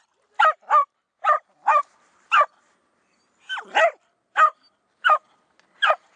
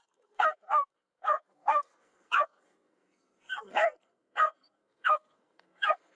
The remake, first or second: second